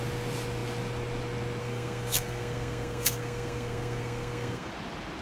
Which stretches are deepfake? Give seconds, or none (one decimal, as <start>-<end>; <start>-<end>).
1.6-4.7